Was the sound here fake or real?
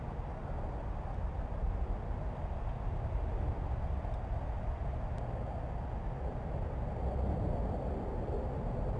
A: real